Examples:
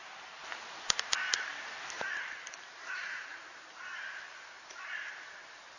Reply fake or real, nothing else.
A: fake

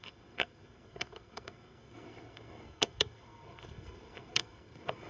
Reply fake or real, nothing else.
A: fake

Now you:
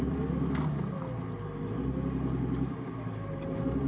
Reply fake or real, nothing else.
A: real